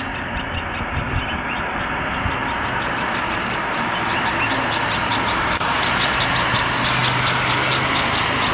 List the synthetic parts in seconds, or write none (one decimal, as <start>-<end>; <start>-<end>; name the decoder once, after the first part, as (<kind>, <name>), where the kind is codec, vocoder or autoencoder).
none